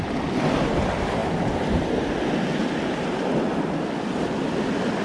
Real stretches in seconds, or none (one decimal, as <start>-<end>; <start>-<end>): 0.0-5.0